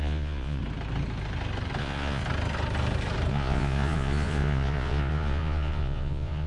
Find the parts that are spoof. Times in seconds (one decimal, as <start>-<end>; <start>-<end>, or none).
0.0-0.6; 1.8-2.2; 3.3-6.5